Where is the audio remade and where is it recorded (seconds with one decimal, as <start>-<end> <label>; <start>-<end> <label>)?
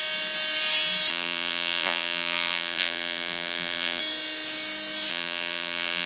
0.0-1.1 recorded; 1.1-4.0 remade; 4.0-5.1 recorded; 5.1-6.1 remade